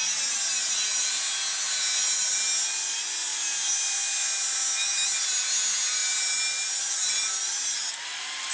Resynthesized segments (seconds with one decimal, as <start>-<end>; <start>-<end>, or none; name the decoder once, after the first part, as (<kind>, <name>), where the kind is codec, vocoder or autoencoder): none